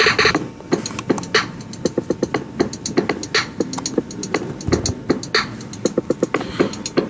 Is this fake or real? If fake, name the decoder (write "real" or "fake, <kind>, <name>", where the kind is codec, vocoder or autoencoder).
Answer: real